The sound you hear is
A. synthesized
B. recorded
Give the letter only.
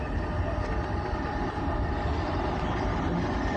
B